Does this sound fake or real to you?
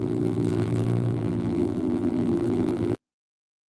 fake